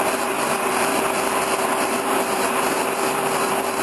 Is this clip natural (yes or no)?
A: no